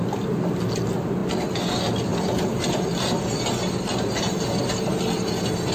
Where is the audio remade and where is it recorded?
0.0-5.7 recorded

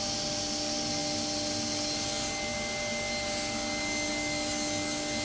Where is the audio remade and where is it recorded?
0.0-5.2 recorded